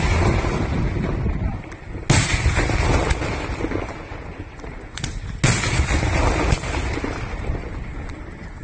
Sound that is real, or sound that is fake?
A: real